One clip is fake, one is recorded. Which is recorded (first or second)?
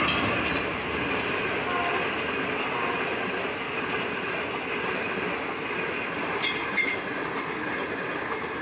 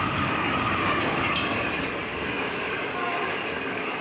first